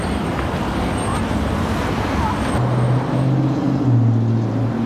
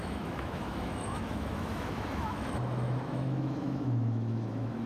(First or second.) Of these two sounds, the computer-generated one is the second